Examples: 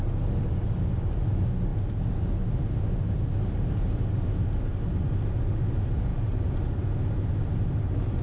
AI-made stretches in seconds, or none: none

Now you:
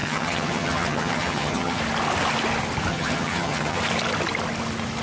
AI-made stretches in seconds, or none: 0.0-1.8 (vocoder, HiFi-GAN); 2.9-3.8

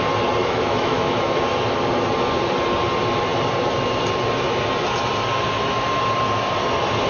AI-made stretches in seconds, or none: 0.4-1.4 (autoencoder, DAC-VAE)

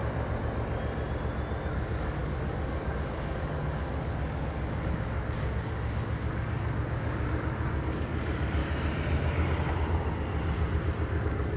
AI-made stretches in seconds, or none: 1.7-8.6 (codec, DAC); 11.2-11.6

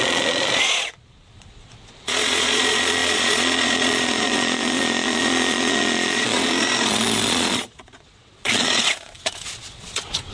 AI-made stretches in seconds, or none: 0.0-10.3 (vocoder, Vocos)

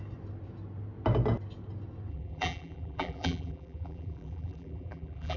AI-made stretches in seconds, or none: 2.1-5.4 (vocoder, BigVGAN v2)

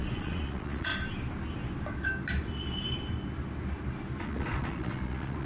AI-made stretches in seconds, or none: 0.0-0.9 (vocoder, Vocos); 4.2-5.5